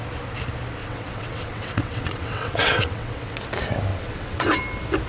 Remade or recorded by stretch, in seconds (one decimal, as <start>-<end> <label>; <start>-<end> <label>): 0.0-0.8 recorded; 0.8-3.4 remade; 3.4-3.9 recorded; 3.9-4.6 remade; 4.6-5.1 recorded